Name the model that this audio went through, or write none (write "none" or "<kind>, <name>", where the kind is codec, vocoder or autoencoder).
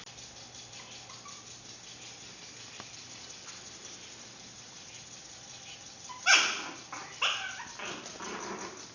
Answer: none